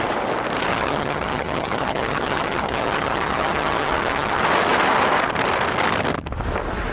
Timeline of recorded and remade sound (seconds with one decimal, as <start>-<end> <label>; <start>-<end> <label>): 0.0-0.7 recorded; 0.7-4.4 remade; 4.4-6.9 recorded